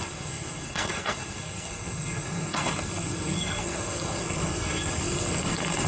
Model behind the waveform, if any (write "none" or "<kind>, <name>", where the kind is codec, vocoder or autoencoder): codec, SNAC